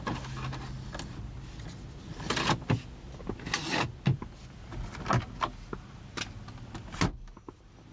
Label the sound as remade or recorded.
recorded